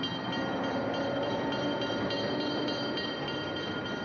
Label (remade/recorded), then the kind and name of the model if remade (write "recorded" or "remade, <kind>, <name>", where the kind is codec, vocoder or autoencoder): recorded